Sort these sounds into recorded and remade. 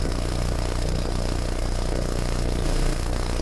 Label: remade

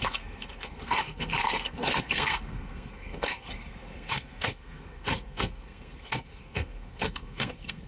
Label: remade